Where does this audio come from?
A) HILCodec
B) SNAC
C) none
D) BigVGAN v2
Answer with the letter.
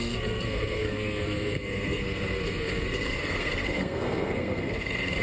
B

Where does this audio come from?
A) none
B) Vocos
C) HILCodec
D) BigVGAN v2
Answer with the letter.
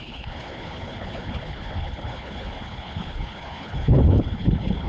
C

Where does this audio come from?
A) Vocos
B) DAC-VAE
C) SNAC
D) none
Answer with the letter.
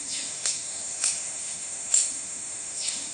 B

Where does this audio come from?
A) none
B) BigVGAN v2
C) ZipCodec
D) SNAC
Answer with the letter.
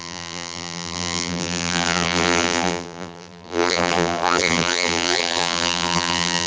B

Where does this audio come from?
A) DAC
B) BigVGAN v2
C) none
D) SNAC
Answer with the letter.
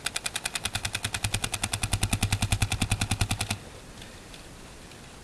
C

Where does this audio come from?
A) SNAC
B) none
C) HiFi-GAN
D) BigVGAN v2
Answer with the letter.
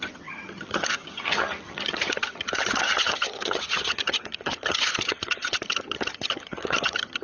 C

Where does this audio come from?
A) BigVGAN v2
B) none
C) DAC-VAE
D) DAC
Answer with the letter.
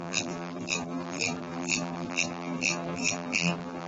A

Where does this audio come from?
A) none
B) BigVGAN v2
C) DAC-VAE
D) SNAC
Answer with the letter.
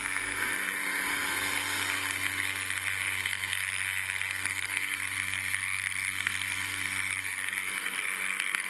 D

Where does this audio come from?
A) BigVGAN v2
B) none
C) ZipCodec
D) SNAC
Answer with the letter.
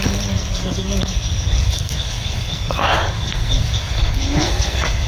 D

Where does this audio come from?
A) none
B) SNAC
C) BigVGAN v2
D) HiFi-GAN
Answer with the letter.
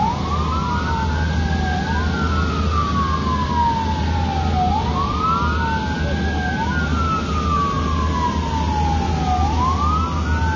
A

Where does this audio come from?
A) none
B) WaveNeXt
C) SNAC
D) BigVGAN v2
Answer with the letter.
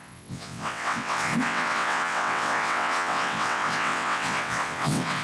B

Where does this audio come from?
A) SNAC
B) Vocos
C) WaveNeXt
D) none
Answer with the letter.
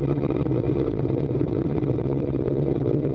C